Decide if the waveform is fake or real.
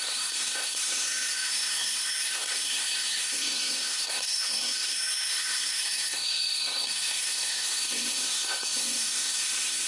fake